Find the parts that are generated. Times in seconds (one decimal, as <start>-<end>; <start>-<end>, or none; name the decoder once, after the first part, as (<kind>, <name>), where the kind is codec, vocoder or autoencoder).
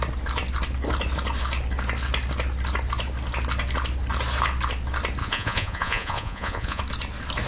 5.2-6.8 (vocoder, Vocos)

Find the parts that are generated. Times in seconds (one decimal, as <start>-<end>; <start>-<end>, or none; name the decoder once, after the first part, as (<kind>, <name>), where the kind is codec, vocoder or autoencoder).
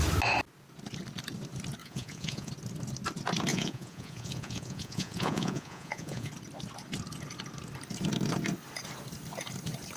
1.8-2.5 (vocoder, Vocos); 3.5-6.3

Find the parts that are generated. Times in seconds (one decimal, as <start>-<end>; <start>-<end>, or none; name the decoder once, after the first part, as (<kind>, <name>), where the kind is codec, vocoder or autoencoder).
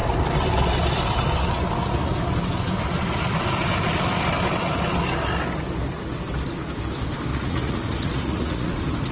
7.3-8.7 (vocoder, Vocos)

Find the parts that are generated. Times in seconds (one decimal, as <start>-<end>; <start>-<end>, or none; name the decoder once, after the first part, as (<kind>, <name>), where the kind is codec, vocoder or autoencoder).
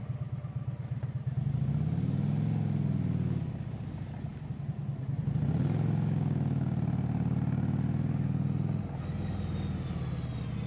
none